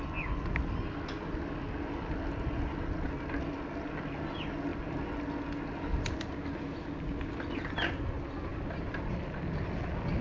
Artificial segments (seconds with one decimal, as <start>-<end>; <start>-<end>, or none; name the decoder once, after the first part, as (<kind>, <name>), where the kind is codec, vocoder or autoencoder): none